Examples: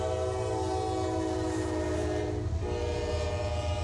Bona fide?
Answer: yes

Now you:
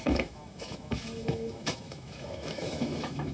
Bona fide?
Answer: no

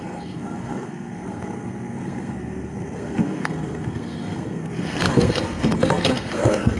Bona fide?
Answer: no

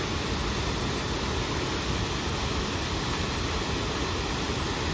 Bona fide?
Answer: yes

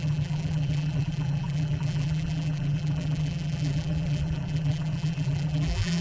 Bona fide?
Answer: no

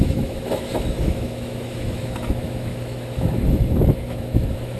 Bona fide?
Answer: no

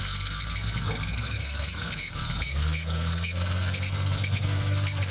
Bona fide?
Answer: no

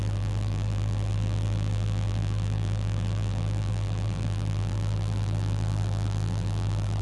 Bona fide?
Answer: no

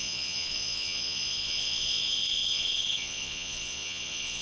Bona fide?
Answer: no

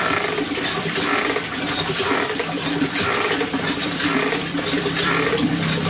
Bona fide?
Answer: no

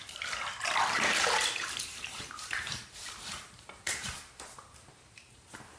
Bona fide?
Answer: no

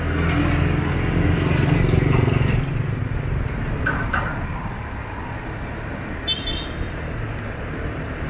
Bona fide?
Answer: yes